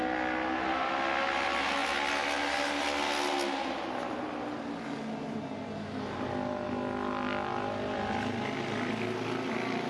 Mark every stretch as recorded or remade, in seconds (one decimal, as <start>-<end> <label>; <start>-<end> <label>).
0.0-9.9 recorded